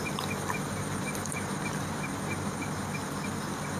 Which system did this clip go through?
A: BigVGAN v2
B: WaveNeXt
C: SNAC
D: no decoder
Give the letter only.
D